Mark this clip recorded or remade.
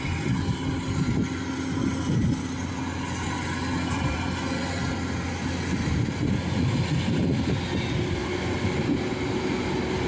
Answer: recorded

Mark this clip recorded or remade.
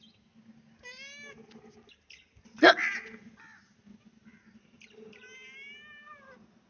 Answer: recorded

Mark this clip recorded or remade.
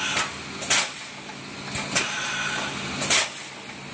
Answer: recorded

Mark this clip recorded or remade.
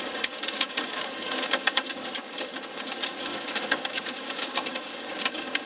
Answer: remade